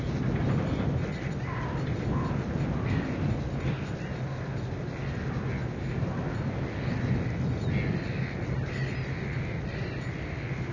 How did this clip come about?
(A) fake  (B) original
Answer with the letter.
B